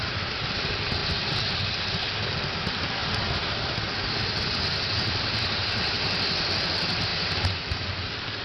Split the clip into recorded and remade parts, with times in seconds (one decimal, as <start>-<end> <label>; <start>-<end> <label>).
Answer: 0.0-8.4 recorded